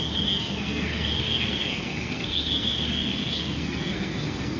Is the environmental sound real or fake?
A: fake